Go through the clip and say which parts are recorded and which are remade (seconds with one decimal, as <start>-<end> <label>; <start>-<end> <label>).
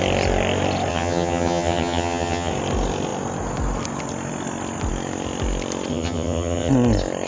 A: 0.0-0.9 recorded; 0.9-2.5 remade; 2.5-5.9 recorded; 5.9-6.7 remade; 6.7-7.3 recorded